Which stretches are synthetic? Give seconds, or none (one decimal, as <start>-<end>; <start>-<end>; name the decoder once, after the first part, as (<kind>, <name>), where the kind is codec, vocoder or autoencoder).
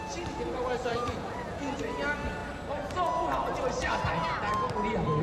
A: 0.9-1.8 (vocoder, Vocos)